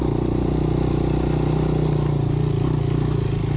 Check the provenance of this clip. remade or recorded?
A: recorded